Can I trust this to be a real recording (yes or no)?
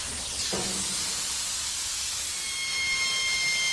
yes